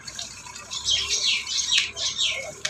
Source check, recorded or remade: remade